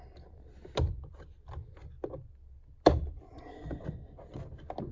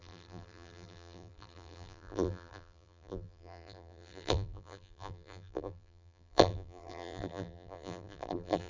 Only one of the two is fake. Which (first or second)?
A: second